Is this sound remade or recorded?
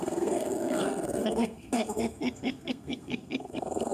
remade